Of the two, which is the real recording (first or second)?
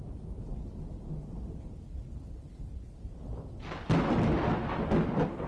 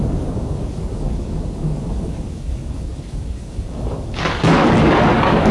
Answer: first